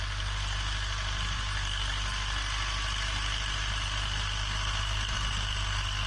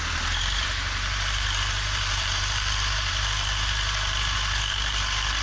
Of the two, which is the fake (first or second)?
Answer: second